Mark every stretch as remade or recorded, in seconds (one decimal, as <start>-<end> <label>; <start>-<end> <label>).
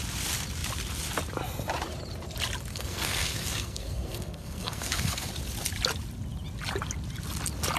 0.0-2.7 recorded; 2.7-5.3 remade; 5.3-7.8 recorded